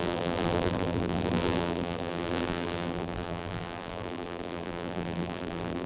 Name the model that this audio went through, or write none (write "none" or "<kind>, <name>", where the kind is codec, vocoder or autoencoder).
vocoder, BigVGAN v2